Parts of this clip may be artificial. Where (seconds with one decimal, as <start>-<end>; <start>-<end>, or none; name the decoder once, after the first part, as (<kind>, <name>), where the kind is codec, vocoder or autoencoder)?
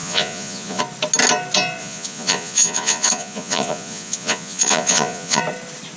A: 0.0-0.8 (vocoder, Vocos); 1.8-5.4